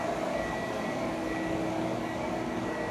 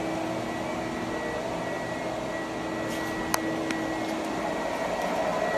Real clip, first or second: second